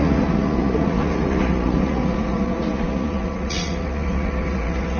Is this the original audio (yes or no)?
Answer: no